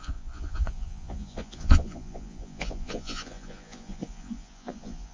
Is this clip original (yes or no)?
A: no